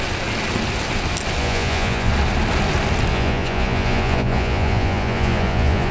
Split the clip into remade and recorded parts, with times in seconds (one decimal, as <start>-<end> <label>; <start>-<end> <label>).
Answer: 0.0-1.4 recorded; 1.4-2.1 remade; 2.1-3.1 recorded; 3.1-5.9 remade